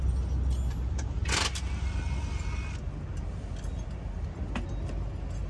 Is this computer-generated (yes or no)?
no